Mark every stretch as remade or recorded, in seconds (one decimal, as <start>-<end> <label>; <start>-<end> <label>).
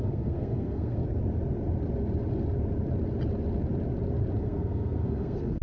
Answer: 0.0-1.0 remade; 1.0-4.4 recorded; 4.4-5.6 remade